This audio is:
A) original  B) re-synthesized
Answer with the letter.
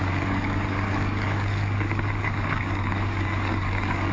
B